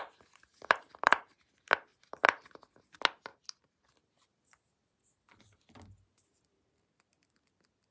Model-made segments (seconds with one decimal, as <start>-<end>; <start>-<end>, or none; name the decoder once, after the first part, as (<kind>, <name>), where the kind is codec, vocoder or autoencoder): 0.5-1.2 (vocoder, BigVGAN v2); 1.9-2.5; 3.3-3.9